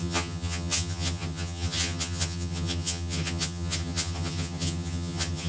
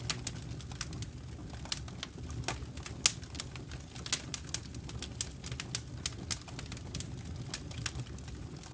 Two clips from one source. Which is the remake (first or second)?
first